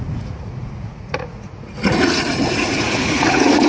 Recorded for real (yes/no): no